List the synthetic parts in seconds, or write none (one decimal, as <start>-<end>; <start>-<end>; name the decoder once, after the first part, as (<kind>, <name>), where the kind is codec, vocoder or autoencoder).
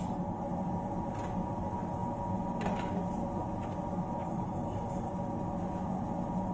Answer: 4.2-5.1 (codec, DAC)